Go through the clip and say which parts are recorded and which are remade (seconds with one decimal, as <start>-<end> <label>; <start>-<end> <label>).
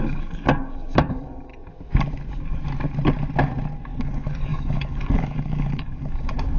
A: 0.0-1.5 remade; 1.5-4.0 recorded; 4.0-6.6 remade